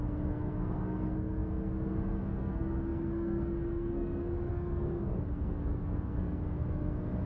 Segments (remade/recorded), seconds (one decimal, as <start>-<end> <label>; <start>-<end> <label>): 0.0-7.3 remade